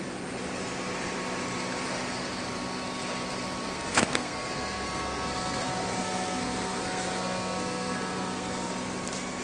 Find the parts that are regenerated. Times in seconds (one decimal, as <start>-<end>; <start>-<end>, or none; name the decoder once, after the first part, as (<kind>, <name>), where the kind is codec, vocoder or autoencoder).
3.6-8.7 (codec, SNAC)